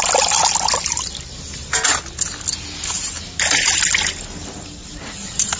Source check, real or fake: real